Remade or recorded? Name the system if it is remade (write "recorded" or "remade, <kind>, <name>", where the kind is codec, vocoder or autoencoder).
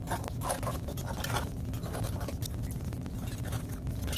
recorded